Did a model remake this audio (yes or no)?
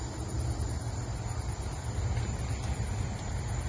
no